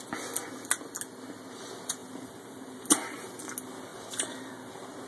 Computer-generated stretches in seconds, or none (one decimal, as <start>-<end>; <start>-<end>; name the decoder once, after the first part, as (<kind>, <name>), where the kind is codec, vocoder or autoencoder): 2.0-3.4 (vocoder, BigVGAN v2); 3.9-4.5